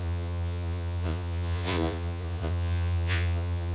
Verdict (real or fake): fake